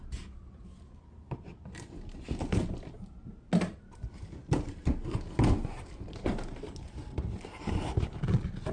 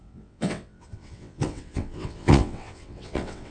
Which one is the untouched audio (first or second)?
first